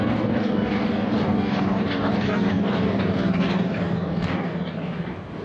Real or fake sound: fake